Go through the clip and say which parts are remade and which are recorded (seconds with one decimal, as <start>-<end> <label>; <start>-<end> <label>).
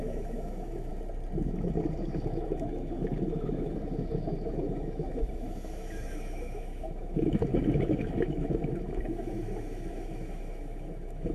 0.0-0.9 remade; 0.9-1.4 recorded; 1.4-11.3 remade